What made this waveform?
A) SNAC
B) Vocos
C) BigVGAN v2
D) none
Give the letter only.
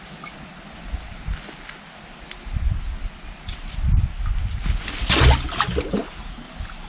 D